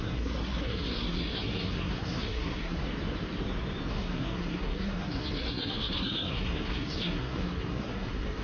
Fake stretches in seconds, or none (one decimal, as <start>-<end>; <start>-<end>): 0.0-2.8; 3.9-8.4